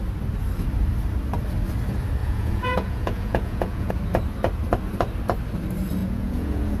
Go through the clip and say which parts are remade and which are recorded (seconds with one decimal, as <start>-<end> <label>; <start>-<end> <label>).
0.0-2.2 recorded; 2.2-3.9 remade; 3.9-6.0 recorded; 6.0-6.8 remade